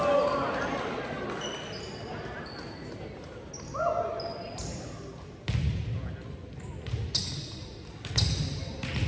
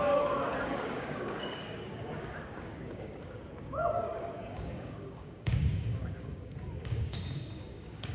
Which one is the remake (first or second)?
second